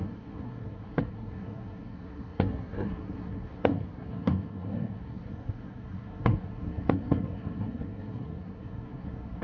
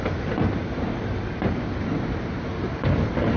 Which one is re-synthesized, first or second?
first